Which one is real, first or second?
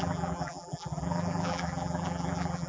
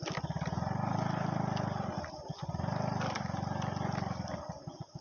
second